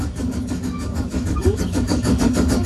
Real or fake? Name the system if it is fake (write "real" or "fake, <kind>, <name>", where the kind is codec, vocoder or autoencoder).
fake, codec, DAC